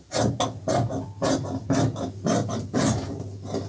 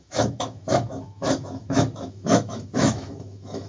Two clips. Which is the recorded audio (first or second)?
first